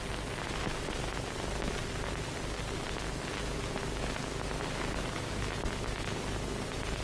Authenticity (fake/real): real